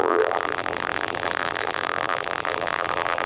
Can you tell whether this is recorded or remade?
remade